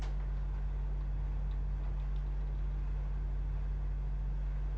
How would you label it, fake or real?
real